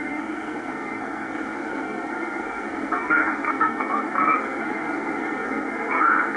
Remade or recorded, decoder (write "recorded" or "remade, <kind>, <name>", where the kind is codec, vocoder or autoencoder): remade, codec, SNAC